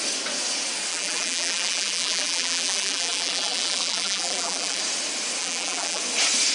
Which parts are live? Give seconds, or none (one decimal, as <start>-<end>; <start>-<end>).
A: 0.0-0.9; 4.8-5.4; 6.0-6.5